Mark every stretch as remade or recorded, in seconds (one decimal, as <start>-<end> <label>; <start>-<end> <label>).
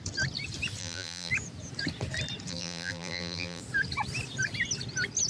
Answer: 0.0-0.8 recorded; 0.8-1.3 remade; 1.3-2.5 recorded; 2.5-3.6 remade; 3.6-5.3 recorded